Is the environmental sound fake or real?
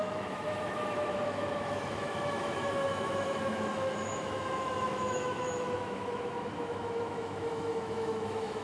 fake